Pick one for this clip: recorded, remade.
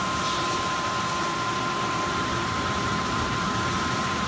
remade